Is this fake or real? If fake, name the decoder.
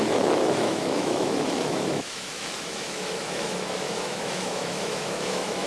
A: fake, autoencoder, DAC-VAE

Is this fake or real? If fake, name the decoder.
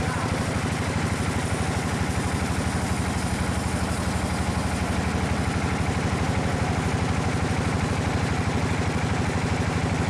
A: real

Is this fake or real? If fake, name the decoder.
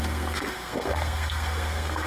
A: fake, codec, SNAC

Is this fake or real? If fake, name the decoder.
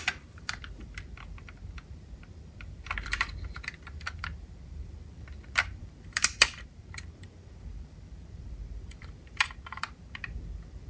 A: fake, vocoder, BigVGAN v2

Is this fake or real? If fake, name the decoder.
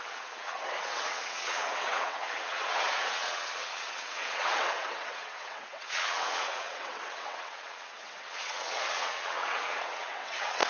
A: fake, vocoder, WaveNeXt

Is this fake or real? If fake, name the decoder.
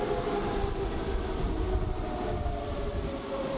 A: real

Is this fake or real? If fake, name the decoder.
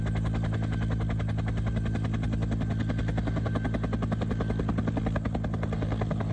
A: real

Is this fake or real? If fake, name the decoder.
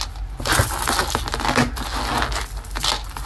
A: real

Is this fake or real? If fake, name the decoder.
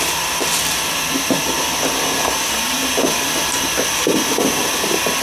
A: real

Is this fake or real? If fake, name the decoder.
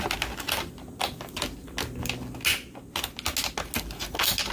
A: real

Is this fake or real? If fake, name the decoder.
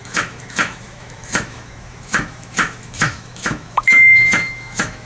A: fake, autoencoder, DAC-VAE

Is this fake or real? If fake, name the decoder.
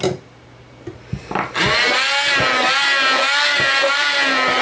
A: real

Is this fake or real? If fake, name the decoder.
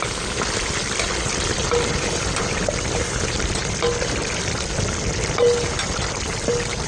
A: real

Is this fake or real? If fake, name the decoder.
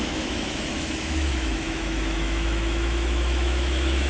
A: fake, autoencoder, DAC-VAE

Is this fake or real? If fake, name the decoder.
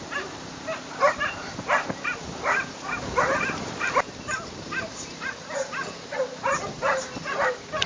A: fake, vocoder, BigVGAN v2